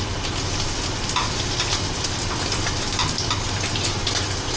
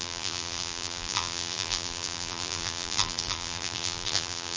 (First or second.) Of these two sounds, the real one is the first